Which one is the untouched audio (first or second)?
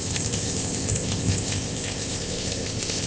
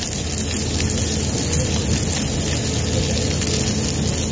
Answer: second